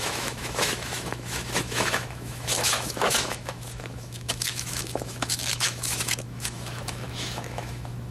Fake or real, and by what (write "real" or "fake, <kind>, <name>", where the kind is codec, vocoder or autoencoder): fake, autoencoder, DAC-VAE